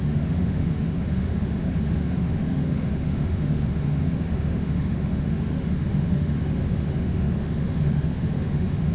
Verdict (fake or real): fake